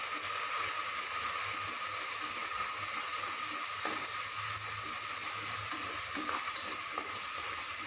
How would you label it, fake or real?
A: real